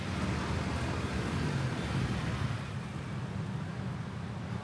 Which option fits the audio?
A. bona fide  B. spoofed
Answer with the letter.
A